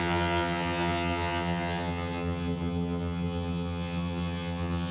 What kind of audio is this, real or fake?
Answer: fake